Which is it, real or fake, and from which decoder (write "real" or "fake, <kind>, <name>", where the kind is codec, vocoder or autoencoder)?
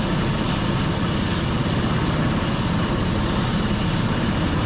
real